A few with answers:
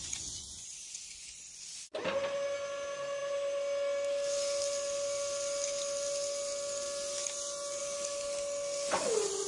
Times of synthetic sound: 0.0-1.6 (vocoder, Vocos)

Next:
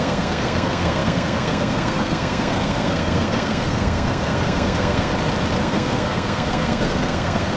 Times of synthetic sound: 0.0-5.1 (codec, SNAC); 5.6-7.6

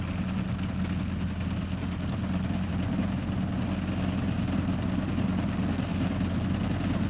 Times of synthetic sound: none

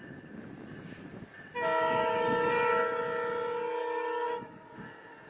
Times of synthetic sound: 2.0-3.0 (codec, DAC); 3.8-4.8

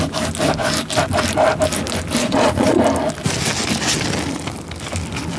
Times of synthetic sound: 2.2-2.8 (vocoder, Vocos)

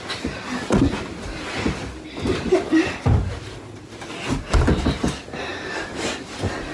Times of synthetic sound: none

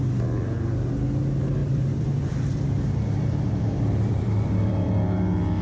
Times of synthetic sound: 1.6-5.0 (vocoder, BigVGAN v2)